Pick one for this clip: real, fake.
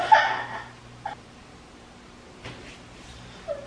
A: real